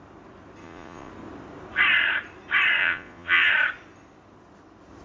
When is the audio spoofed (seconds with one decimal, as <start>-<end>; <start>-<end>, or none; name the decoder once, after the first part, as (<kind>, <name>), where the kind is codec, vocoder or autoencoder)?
0.6-1.1 (vocoder, Vocos); 2.8-3.5